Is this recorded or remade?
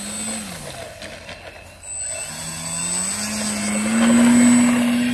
recorded